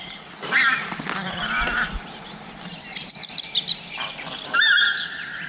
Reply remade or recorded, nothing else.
remade